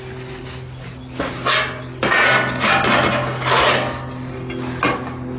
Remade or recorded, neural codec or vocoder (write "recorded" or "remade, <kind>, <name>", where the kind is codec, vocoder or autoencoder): recorded